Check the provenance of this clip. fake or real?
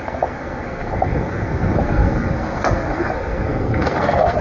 fake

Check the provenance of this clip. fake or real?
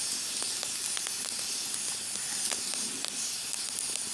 real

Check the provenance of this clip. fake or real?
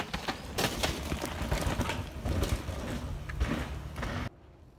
real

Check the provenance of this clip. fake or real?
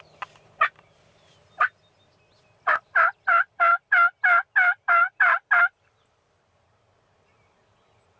real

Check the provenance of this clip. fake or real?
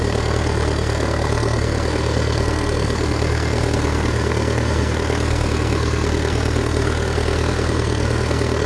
fake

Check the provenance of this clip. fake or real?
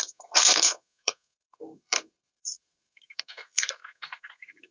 fake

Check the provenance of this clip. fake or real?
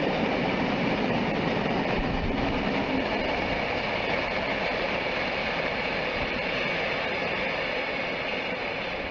real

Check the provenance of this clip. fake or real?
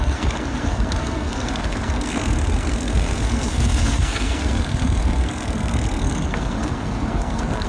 fake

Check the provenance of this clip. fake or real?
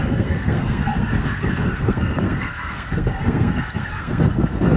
fake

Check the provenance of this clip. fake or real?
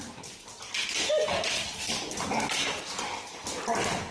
real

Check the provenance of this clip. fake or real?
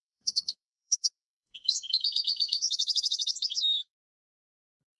fake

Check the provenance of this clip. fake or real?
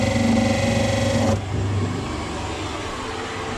real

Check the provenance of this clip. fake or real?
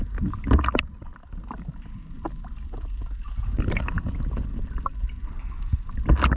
real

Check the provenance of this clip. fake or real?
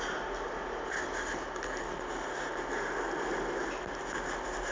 real